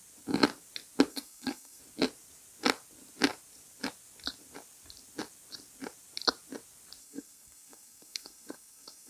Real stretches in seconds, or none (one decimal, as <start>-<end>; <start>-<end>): 0.0-1.1; 1.8-7.0